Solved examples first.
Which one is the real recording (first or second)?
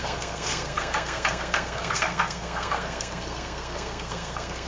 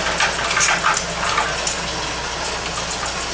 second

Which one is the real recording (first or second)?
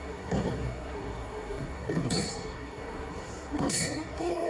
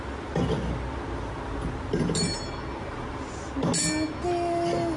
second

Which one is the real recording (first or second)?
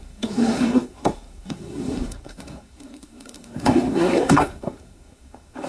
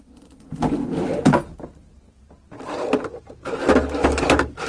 second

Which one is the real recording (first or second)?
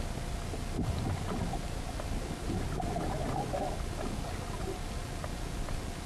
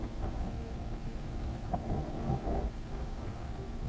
first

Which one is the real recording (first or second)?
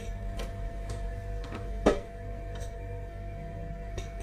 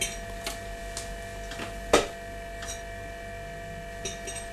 second